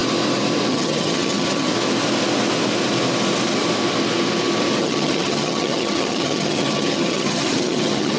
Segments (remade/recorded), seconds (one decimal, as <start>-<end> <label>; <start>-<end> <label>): 0.0-0.7 recorded; 0.7-1.7 remade; 1.7-4.8 recorded; 4.8-8.2 remade